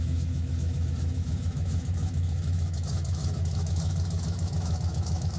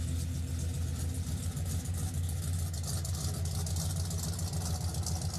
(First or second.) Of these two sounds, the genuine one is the second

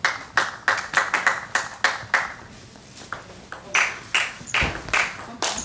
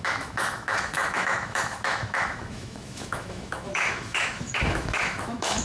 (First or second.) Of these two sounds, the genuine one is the first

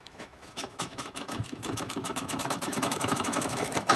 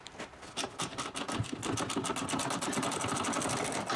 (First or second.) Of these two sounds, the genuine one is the second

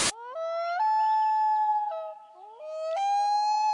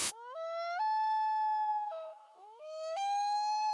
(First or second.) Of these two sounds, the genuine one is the first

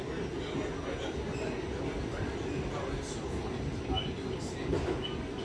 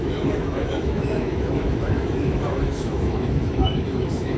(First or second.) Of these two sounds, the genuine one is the first